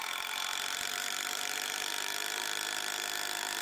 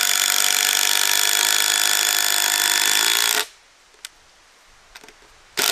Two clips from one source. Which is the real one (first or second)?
second